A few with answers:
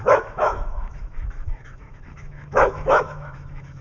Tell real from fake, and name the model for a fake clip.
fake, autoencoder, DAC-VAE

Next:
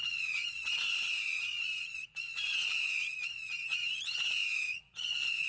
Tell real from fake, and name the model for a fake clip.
fake, vocoder, Vocos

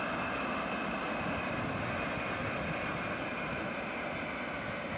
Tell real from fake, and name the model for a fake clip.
real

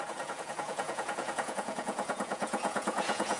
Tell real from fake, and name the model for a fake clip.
fake, vocoder, Vocos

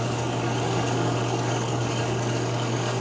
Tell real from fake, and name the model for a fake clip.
fake, codec, DAC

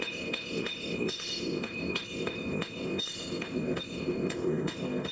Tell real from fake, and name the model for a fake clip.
fake, codec, ZipCodec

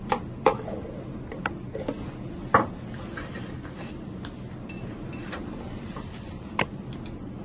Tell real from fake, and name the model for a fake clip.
real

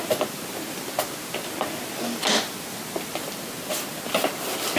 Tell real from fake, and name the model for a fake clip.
real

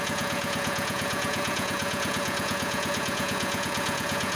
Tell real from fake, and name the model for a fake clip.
fake, vocoder, Vocos